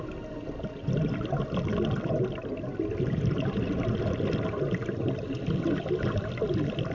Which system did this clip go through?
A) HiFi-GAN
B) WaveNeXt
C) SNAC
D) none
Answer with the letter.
D